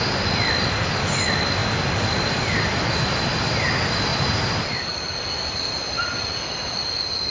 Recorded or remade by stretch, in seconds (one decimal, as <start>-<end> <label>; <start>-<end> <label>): 0.0-7.3 recorded